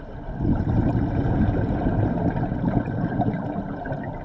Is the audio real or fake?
real